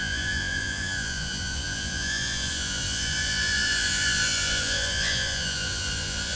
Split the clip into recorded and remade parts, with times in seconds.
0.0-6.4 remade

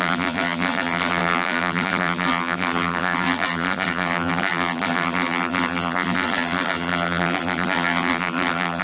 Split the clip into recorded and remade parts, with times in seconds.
0.0-8.8 remade

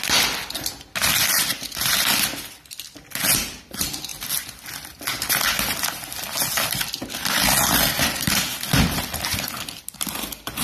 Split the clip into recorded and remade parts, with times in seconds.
0.0-10.6 recorded

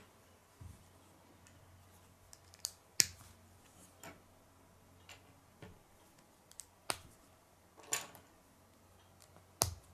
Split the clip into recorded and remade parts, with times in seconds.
0.0-9.9 recorded